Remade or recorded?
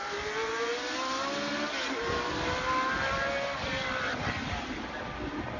recorded